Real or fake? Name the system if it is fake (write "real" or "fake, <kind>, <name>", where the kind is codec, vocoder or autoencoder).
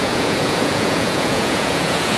fake, vocoder, Vocos